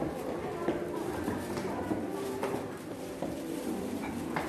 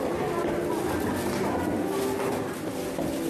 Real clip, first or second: second